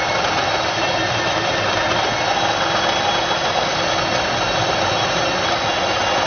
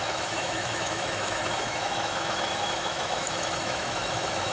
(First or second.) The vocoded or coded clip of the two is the second